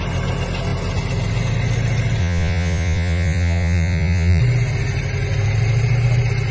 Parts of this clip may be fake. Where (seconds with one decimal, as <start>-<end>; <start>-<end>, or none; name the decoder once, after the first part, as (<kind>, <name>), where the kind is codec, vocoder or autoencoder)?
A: 2.2-4.4 (vocoder, Vocos)